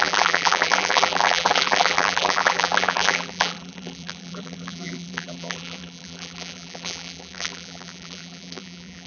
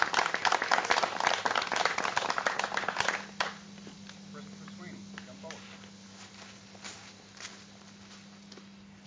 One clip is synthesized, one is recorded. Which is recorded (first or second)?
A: second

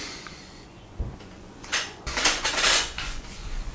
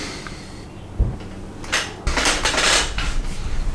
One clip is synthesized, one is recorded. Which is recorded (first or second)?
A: second